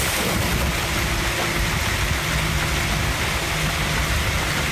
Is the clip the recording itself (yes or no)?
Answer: yes